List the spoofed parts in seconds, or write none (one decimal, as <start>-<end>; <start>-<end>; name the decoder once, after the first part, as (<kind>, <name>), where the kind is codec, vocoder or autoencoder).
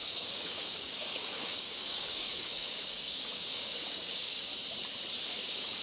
0.0-4.5 (codec, DAC); 5.3-5.8